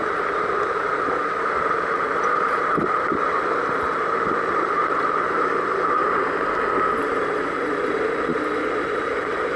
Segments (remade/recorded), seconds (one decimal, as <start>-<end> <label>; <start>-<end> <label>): 0.0-6.0 remade; 6.0-7.0 recorded; 7.0-9.6 remade